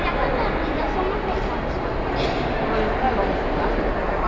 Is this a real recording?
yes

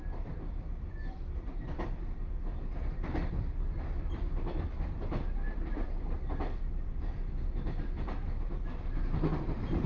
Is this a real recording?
no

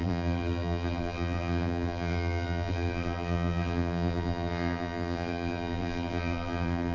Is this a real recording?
no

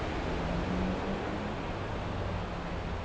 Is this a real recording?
yes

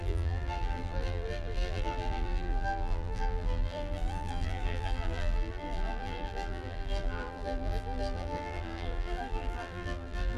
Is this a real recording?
no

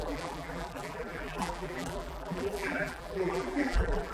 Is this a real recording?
no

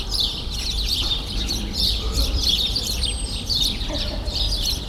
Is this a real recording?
no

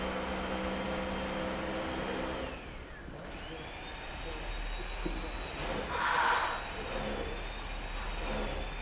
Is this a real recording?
yes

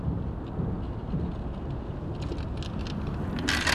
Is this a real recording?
yes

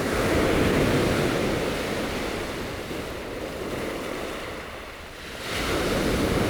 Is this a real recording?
yes